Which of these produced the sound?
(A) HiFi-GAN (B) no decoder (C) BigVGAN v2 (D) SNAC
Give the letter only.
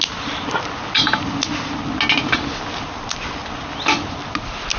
B